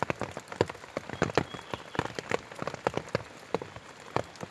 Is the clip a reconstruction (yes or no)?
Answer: no